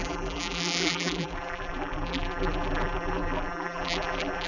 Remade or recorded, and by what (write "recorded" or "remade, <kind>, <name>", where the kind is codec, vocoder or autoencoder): remade, vocoder, BigVGAN v2